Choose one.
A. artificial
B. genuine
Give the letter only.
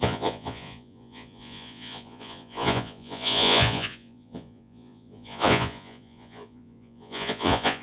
A